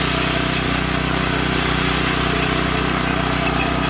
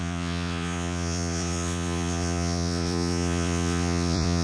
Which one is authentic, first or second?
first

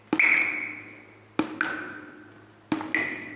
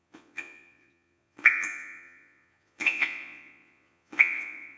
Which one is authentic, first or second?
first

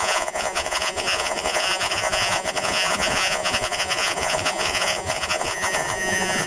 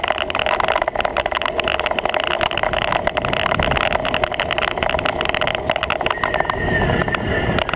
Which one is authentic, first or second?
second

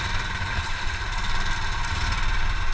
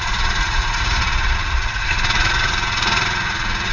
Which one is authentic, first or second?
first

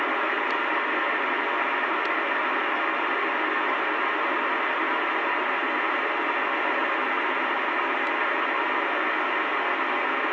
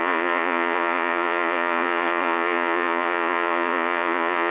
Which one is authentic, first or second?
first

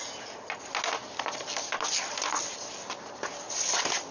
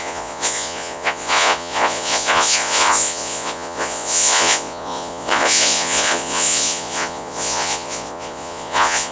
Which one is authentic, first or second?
first